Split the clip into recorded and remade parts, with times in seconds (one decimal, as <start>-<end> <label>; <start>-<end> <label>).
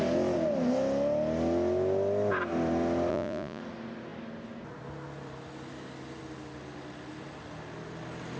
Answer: 0.0-3.1 recorded; 3.1-3.6 remade; 3.6-8.4 recorded